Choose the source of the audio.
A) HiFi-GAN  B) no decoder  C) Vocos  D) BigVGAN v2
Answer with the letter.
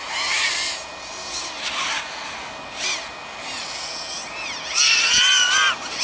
B